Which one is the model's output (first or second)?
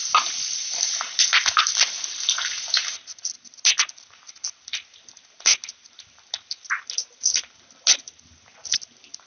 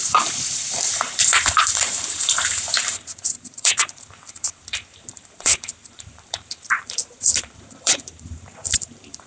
second